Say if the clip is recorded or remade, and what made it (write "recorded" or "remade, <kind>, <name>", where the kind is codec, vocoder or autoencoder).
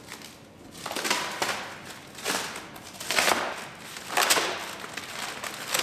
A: recorded